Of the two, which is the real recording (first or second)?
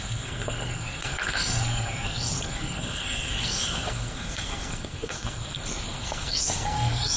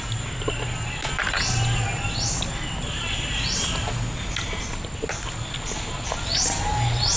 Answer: second